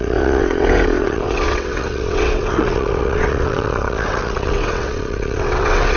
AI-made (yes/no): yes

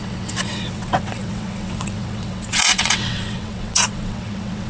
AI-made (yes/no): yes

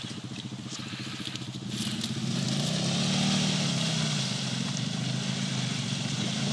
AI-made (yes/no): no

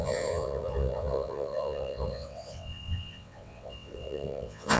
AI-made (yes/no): yes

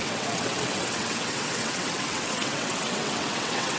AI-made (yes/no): yes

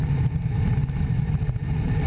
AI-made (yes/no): no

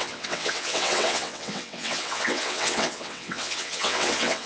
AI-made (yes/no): yes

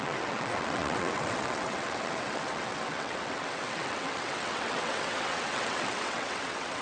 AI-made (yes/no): yes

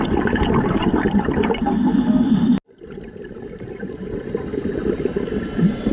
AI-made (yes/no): no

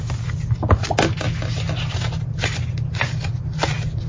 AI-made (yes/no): no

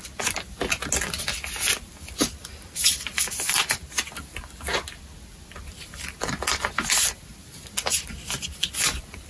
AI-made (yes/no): no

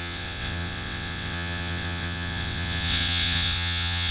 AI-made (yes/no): yes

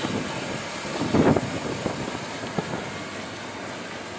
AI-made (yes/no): no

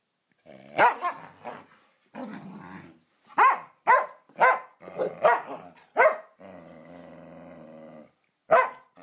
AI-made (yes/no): no